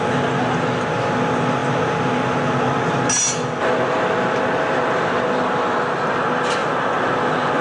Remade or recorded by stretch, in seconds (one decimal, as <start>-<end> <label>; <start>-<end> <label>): 0.0-7.6 recorded